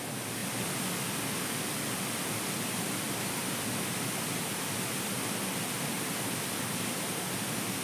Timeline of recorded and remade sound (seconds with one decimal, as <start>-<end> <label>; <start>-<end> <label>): 0.0-7.8 recorded